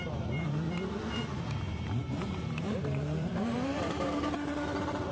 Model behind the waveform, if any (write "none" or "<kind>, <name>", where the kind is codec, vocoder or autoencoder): vocoder, BigVGAN v2